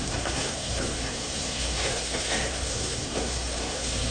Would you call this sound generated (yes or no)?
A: yes